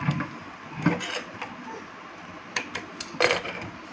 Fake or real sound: real